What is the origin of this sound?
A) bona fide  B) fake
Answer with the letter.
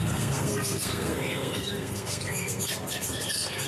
B